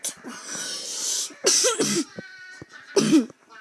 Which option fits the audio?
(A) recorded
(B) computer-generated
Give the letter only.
A